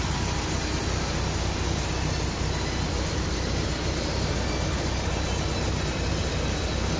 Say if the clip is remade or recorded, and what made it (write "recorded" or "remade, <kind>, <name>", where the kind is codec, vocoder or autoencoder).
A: recorded